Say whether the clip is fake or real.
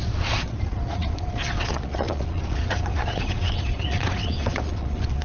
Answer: fake